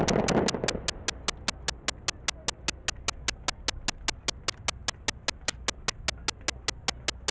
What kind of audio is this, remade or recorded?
recorded